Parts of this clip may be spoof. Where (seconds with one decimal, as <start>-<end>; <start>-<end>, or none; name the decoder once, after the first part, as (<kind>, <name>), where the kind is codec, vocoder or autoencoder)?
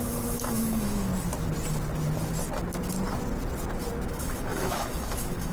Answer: 0.0-1.1 (autoencoder, DAC-VAE); 4.1-5.5